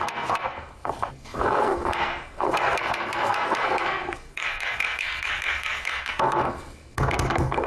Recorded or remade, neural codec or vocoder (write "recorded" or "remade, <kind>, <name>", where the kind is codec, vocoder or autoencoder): remade, codec, SNAC